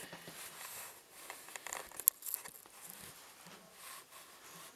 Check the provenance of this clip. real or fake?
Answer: real